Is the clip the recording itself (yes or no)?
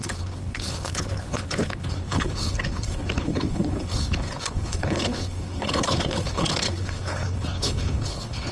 no